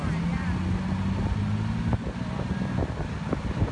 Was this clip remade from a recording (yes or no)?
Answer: no